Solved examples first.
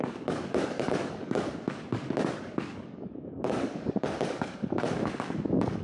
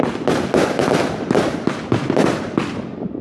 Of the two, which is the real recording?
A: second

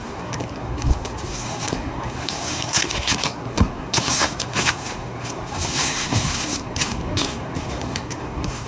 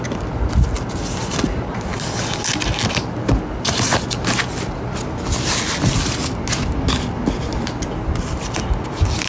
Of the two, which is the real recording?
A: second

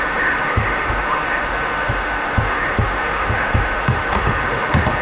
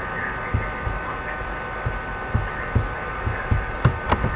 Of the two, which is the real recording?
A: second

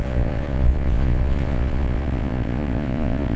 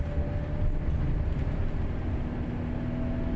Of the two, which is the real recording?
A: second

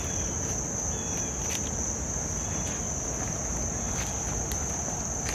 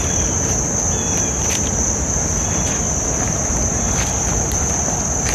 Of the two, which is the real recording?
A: first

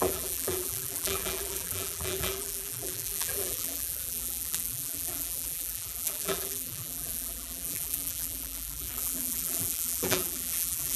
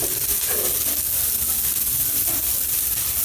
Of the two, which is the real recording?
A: second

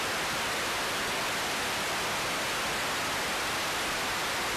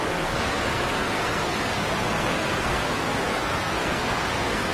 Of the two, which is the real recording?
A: first